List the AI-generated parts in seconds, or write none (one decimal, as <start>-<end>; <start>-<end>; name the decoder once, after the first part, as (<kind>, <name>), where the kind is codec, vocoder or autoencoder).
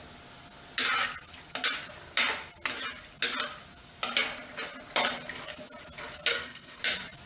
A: 6.3-6.8 (codec, SNAC)